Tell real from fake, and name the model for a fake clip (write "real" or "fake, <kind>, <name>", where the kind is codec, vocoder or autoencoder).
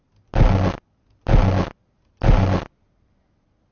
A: real